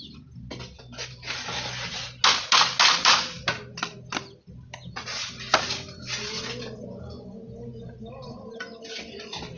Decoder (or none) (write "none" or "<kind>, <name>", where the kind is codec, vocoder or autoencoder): none